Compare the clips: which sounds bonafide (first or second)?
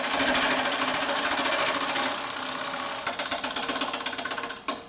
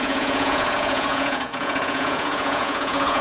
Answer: first